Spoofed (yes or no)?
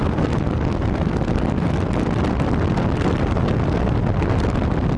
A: no